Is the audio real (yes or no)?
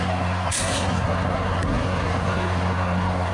no